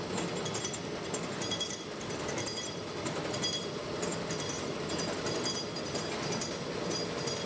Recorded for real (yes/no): yes